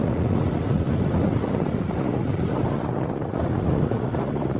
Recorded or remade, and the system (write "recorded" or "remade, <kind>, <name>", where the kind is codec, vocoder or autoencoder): remade, vocoder, Vocos